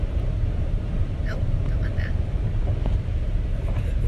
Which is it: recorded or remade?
remade